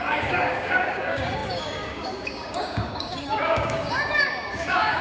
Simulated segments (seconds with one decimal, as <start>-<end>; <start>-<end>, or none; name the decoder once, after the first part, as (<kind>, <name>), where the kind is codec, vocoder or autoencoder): 0.0-5.0 (codec, DAC)